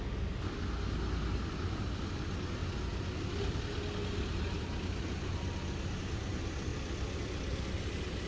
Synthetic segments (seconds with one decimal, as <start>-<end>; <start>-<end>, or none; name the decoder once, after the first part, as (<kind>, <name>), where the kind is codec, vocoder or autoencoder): none

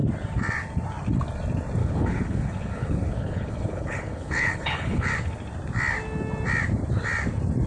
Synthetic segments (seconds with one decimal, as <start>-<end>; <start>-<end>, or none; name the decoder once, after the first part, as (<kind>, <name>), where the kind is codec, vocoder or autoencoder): 1.8-5.1 (codec, HILCodec)

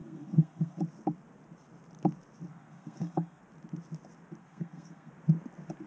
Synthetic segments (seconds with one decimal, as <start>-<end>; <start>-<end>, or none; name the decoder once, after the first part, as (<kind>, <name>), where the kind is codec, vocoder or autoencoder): 0.0-0.8 (codec, SNAC); 2.5-3.4; 4.4-5.1